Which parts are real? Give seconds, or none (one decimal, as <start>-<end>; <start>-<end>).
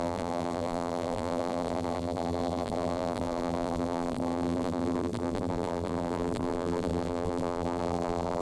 none